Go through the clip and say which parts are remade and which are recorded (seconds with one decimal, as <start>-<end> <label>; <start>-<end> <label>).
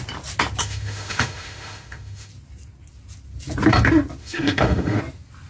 0.0-0.6 recorded; 0.6-2.3 remade; 2.3-4.2 recorded; 4.2-5.0 remade; 5.0-5.5 recorded